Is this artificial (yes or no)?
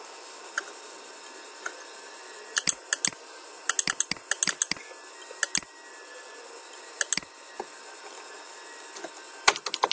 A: no